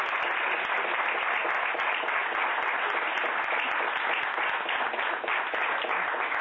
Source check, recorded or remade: recorded